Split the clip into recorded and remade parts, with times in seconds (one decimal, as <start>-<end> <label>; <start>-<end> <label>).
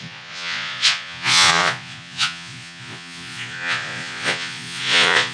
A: 0.0-5.3 remade